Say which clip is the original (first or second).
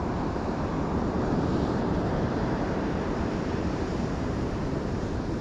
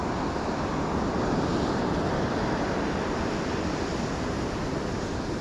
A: second